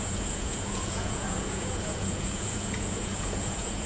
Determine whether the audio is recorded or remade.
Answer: remade